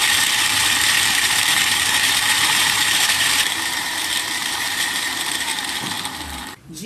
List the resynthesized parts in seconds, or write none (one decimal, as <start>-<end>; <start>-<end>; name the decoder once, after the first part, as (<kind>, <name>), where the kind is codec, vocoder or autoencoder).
0.0-5.5 (vocoder, BigVGAN v2)